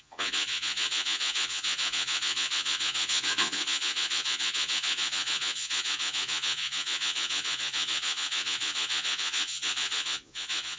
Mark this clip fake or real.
fake